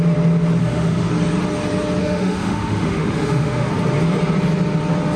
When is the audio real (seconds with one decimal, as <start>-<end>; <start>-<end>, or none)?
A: 0.0-0.6; 1.1-2.0; 3.7-5.2